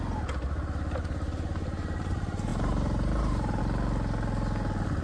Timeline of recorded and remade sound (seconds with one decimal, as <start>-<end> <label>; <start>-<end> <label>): 0.0-2.5 recorded; 2.5-3.6 remade; 3.6-5.0 recorded